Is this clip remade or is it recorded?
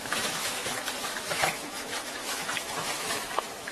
remade